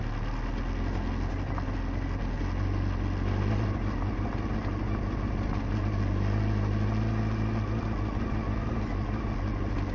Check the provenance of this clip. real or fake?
real